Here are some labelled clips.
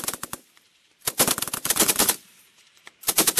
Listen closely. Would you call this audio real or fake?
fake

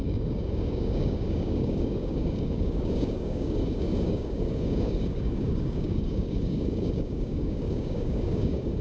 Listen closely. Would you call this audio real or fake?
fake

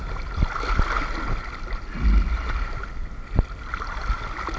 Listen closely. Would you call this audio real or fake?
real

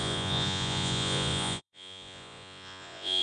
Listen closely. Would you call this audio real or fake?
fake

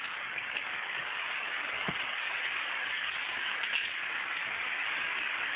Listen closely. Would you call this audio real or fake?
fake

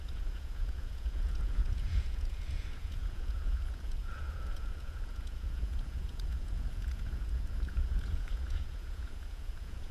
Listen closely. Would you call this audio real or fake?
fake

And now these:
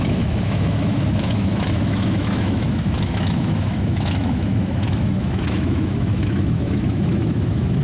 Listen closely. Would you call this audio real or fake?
fake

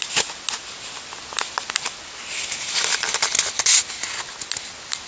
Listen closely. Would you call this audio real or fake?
real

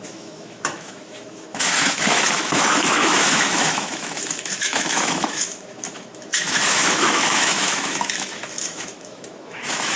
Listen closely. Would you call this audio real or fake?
fake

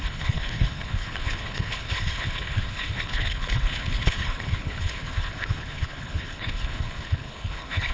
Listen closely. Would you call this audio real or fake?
fake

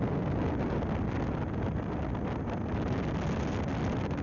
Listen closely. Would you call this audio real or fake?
real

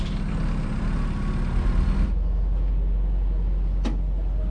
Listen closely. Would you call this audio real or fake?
real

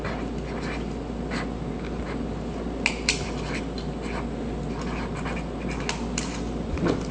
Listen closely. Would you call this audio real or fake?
real